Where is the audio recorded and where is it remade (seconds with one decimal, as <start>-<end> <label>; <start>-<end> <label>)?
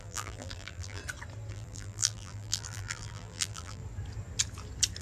0.0-1.0 remade; 1.0-1.5 recorded; 1.5-3.8 remade; 3.8-5.0 recorded